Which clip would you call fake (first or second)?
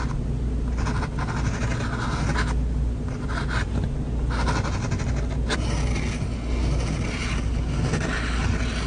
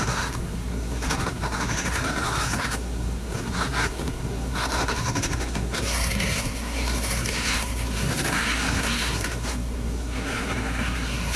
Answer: second